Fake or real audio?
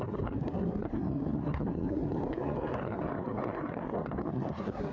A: fake